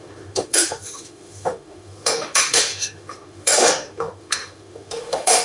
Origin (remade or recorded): remade